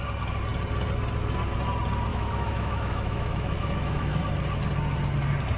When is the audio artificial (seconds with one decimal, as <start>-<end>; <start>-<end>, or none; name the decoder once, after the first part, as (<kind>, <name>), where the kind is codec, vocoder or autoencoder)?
2.1-4.2 (autoencoder, DAC-VAE)